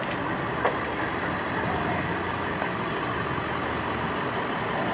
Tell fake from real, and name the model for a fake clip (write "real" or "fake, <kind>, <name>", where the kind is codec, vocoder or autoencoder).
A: real